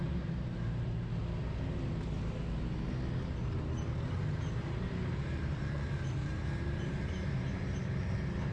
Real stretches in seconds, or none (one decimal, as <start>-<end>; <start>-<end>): 1.2-3.4